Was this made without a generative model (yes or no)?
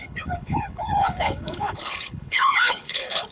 no